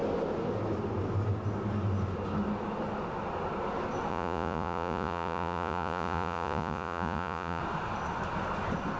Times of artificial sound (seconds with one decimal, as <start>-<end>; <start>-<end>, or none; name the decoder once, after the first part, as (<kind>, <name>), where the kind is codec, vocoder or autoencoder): 4.1-7.6 (vocoder, Vocos)